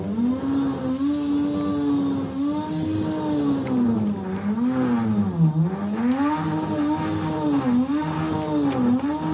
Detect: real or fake real